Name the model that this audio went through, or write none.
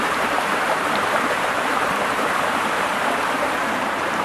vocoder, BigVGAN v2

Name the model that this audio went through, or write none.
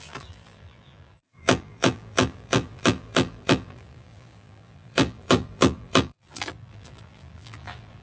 vocoder, BigVGAN v2